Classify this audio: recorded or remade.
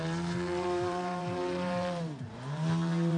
remade